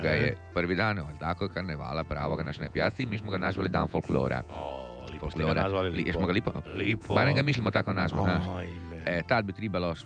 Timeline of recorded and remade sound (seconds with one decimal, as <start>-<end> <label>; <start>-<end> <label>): 0.0-2.2 recorded; 2.2-4.7 remade; 4.7-6.7 recorded; 6.7-8.2 remade; 8.2-10.1 recorded